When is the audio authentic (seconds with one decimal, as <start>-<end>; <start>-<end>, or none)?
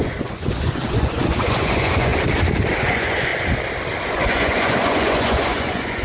2.1-2.8; 3.3-4.1